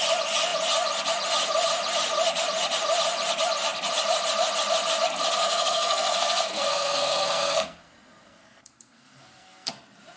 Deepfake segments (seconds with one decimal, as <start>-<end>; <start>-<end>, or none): 5.4-9.7